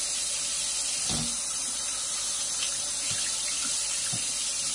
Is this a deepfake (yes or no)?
no